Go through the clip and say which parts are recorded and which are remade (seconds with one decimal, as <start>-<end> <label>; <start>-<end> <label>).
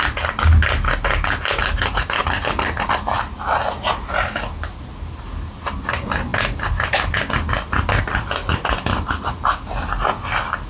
0.0-2.2 recorded; 2.2-4.7 remade; 4.7-10.7 recorded